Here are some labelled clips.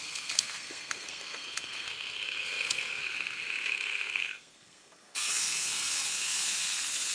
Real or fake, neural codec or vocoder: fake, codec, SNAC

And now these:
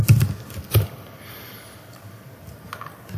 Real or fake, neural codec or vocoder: real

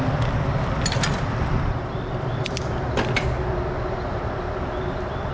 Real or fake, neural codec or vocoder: real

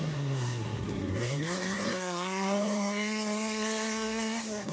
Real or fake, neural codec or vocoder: fake, codec, SNAC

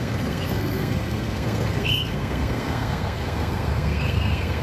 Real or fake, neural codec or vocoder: fake, codec, SNAC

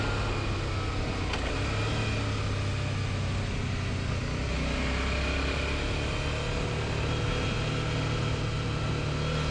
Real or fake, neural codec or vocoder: real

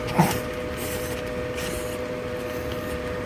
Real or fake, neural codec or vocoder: real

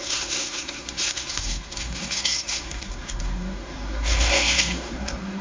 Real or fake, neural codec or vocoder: fake, codec, SNAC